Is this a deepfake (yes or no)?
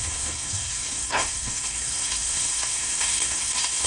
yes